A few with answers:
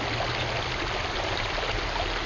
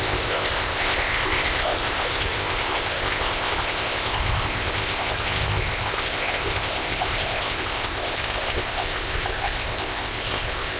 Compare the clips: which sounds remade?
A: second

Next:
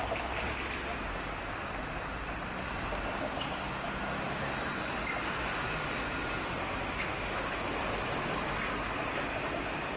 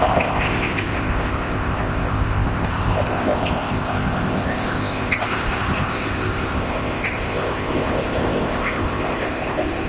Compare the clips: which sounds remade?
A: second